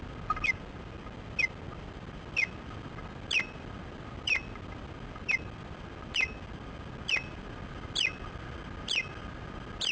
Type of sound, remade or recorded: recorded